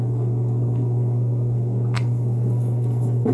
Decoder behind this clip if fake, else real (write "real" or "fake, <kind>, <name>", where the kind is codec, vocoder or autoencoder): fake, codec, SNAC